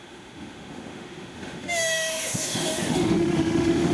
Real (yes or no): no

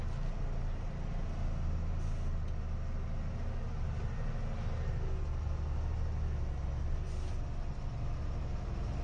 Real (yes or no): yes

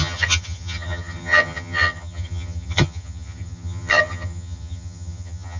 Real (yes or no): no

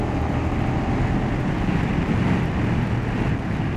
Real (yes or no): yes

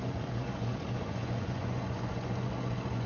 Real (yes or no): no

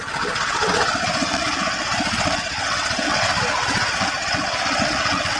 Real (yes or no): no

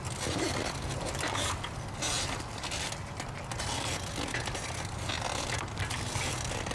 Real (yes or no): yes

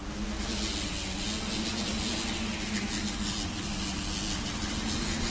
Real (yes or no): yes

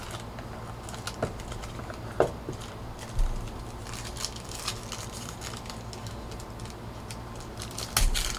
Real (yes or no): yes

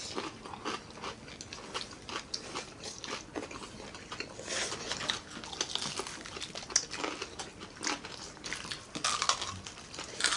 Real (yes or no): yes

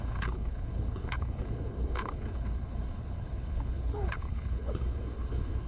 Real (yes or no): no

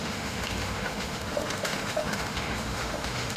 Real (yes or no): no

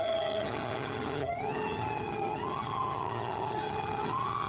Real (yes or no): no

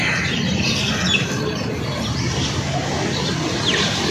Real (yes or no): yes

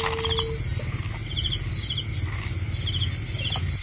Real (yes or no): yes